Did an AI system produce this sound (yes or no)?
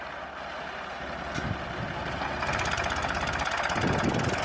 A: no